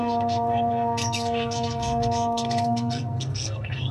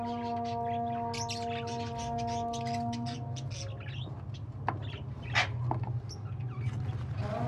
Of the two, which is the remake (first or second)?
first